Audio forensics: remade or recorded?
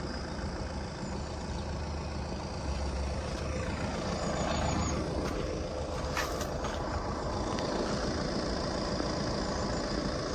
recorded